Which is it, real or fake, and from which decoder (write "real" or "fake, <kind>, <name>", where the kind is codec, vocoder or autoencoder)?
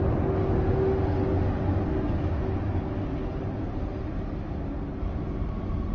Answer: real